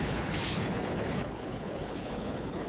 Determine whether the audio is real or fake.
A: fake